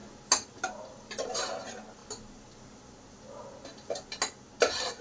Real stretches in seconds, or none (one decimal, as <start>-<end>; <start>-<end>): 0.0-5.0